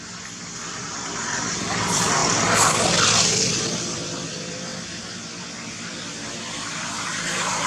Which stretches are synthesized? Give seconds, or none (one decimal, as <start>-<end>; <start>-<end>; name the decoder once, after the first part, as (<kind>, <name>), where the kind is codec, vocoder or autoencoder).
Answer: 0.0-2.2 (vocoder, BigVGAN v2); 3.6-4.7